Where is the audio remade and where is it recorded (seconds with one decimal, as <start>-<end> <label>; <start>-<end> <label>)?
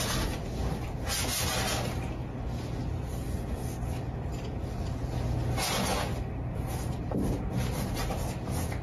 0.0-8.8 recorded